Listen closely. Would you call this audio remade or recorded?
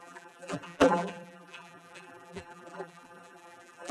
remade